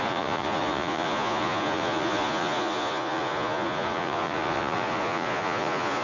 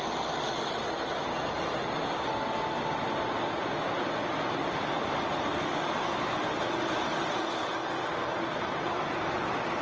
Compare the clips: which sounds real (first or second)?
second